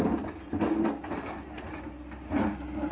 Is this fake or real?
real